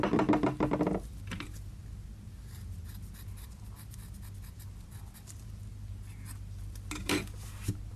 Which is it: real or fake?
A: real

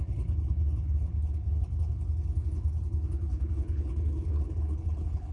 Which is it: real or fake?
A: fake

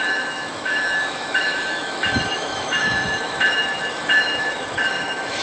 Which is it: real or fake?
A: fake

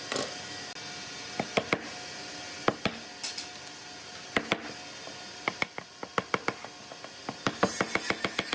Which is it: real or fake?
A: real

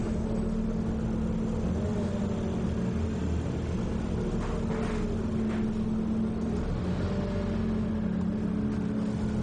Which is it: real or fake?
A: real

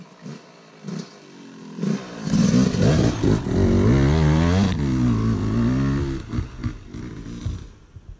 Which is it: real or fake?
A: real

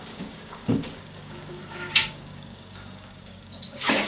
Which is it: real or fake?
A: fake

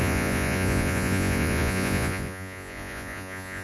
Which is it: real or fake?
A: fake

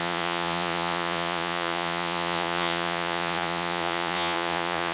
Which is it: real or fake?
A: fake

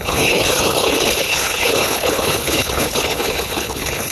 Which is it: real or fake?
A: fake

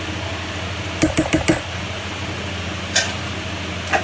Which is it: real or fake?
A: real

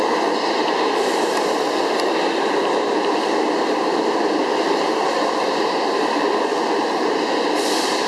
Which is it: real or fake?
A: real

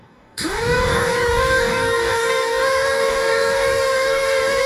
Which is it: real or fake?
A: fake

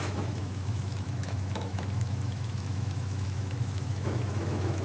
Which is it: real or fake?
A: fake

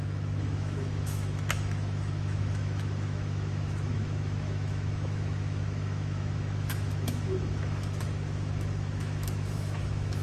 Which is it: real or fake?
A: fake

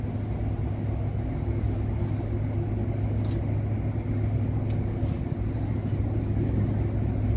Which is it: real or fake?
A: real